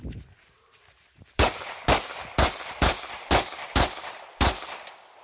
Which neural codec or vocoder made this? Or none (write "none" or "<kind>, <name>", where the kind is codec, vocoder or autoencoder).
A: vocoder, BigVGAN v2